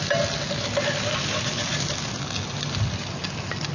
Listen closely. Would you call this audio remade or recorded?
recorded